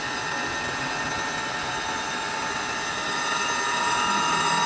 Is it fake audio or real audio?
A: real